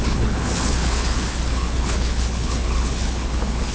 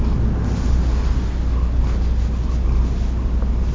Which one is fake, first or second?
first